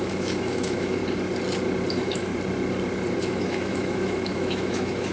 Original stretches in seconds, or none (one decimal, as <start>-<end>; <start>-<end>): 1.0-1.9; 2.3-3.2